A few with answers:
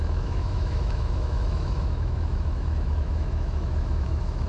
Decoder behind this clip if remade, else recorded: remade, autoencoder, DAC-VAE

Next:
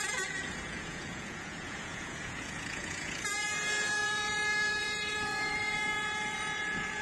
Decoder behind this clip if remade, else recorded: remade, vocoder, Vocos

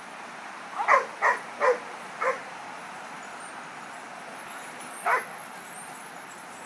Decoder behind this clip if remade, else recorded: recorded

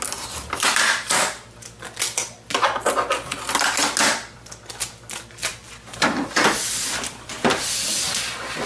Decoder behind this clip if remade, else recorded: recorded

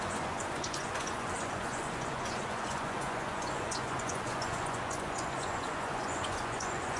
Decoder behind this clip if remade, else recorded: remade, vocoder, Vocos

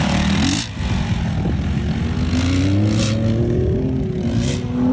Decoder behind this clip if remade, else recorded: recorded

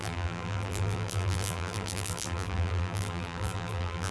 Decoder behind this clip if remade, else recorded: remade, vocoder, BigVGAN v2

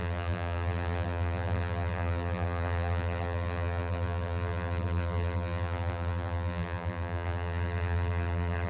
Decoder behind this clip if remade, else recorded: remade, vocoder, BigVGAN v2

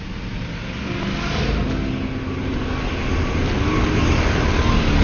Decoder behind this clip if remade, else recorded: recorded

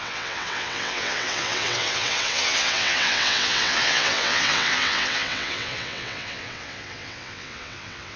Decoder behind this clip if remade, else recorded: remade, vocoder, WaveNeXt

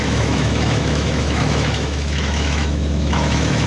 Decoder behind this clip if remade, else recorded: remade, autoencoder, DAC-VAE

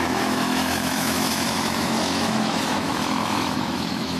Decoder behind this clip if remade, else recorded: remade, autoencoder, DAC-VAE